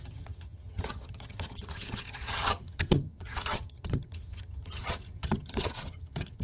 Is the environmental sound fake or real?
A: fake